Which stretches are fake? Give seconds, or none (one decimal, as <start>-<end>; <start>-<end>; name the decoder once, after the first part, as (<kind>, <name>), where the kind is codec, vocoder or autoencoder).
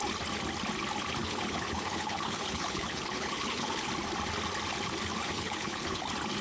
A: 1.2-3.9 (codec, HILCodec); 5.2-6.0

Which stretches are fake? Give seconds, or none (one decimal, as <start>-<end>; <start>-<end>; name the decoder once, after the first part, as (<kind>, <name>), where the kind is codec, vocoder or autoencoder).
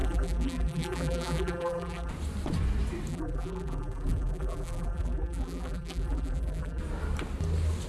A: 0.0-2.1 (vocoder, BigVGAN v2); 3.1-6.8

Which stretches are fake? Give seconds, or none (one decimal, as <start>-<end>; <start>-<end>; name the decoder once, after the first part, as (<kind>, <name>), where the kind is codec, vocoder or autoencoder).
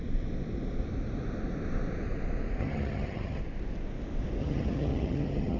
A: 2.6-3.4 (vocoder, HiFi-GAN); 4.4-5.6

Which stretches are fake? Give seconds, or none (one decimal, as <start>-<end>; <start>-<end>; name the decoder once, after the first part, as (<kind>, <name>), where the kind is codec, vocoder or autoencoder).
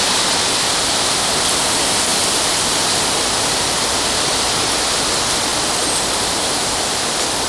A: none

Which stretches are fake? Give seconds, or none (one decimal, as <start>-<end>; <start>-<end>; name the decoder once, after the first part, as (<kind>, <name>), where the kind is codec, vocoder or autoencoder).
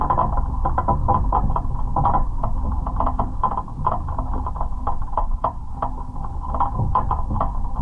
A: 5.2-5.7 (vocoder, BigVGAN v2)